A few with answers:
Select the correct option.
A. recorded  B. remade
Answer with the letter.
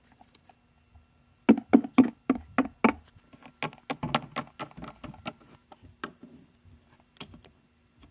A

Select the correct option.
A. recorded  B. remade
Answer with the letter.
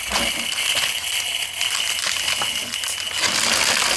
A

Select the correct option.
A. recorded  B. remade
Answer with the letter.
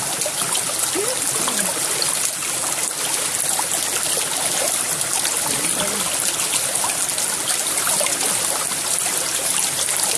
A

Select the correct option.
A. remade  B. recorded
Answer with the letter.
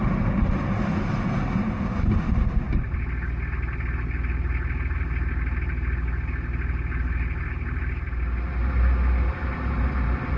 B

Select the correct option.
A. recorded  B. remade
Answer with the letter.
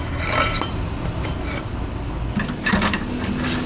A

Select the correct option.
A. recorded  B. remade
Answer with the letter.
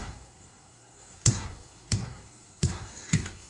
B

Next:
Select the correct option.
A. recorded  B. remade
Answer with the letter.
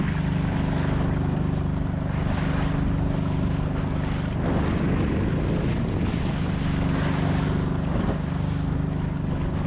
A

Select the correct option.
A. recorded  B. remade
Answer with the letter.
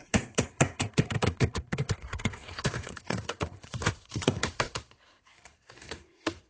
B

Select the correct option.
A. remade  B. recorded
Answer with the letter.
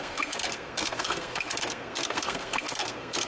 A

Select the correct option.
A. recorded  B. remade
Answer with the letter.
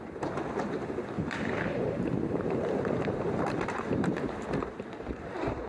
B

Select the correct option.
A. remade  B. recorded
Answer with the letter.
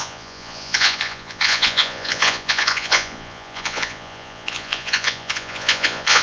A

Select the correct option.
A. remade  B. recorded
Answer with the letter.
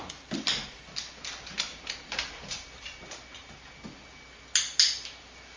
B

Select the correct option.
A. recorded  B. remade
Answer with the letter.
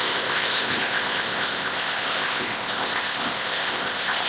B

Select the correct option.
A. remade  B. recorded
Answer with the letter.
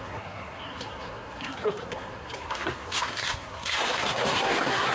A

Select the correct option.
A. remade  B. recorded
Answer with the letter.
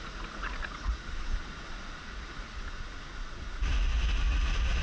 A